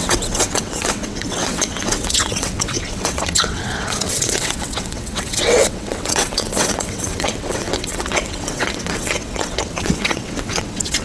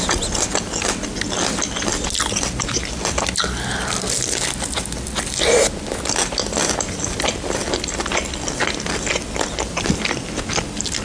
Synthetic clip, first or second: first